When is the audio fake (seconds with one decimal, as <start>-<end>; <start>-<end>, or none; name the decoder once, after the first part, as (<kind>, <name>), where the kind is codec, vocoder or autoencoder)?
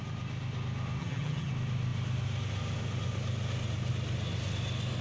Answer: 1.0-1.5 (vocoder, HiFi-GAN)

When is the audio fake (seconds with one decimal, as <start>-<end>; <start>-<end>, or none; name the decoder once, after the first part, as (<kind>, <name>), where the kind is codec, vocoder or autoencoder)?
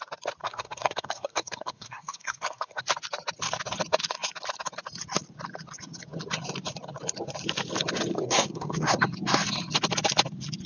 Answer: 0.4-2.8 (codec, SNAC); 8.1-9.0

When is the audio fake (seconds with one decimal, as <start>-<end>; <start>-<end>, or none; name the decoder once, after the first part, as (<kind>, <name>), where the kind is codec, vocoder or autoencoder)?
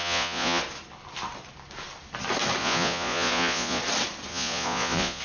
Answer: 0.0-0.6 (vocoder, Vocos); 2.6-3.8; 4.3-5.2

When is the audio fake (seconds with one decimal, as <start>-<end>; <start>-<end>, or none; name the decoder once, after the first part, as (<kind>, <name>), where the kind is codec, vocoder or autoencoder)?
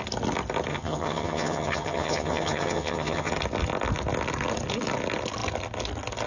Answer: 0.7-3.3 (vocoder, HiFi-GAN)